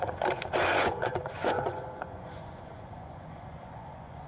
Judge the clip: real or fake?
fake